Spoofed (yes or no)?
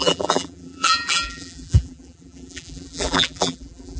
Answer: yes